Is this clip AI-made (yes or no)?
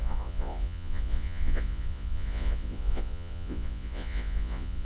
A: yes